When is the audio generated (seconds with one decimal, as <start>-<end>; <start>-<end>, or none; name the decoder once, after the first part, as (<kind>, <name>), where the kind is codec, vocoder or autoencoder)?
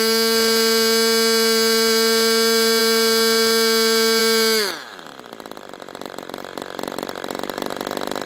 none